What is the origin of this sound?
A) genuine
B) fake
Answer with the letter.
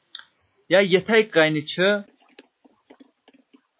A